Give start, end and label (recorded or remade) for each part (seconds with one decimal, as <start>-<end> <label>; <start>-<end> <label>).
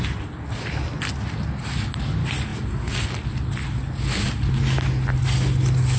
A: 0.0-6.0 recorded